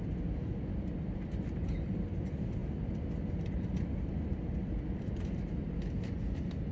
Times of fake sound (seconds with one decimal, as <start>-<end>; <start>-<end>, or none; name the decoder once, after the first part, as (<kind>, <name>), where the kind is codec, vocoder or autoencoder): none